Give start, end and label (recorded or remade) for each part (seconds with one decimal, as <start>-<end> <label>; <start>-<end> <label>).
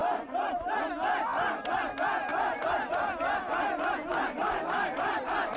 0.0-2.3 recorded; 2.3-3.0 remade; 3.0-4.1 recorded; 4.1-5.6 remade